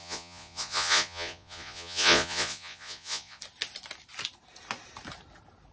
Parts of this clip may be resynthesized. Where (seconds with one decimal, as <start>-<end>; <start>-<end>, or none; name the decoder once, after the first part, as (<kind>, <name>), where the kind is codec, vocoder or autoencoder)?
0.0-3.4 (vocoder, Vocos)